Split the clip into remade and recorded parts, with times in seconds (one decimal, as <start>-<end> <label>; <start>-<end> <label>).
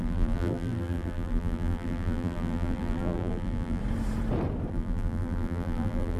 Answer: 0.0-3.8 remade; 3.8-4.7 recorded; 4.7-6.2 remade